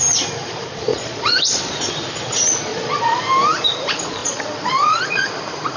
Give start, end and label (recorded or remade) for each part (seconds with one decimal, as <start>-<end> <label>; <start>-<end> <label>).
0.0-0.9 recorded; 0.9-1.6 remade; 1.6-2.7 recorded; 2.7-3.2 remade; 3.2-4.2 recorded; 4.2-5.3 remade; 5.3-5.8 recorded